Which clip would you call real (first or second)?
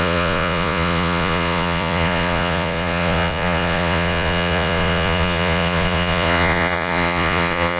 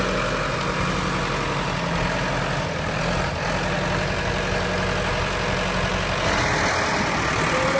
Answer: second